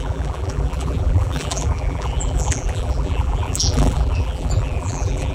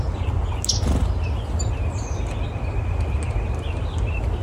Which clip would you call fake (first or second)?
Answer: first